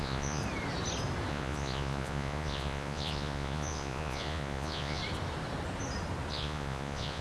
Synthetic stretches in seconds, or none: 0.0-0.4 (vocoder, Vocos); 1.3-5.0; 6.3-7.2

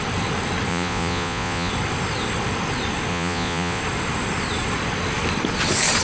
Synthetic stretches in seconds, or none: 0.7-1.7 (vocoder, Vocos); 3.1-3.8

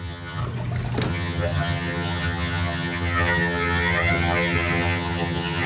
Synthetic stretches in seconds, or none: 0.0-0.4 (vocoder, HiFi-GAN); 1.1-5.7